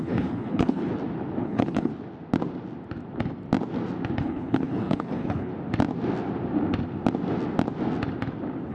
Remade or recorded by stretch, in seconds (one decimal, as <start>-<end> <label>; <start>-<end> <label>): 0.0-0.9 remade; 0.9-1.4 recorded; 1.4-1.9 remade; 1.9-4.2 recorded; 4.2-5.5 remade; 5.5-8.7 recorded